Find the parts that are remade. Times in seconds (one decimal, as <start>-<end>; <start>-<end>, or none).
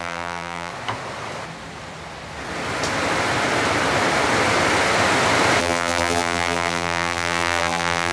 0.0-0.7; 5.6-8.1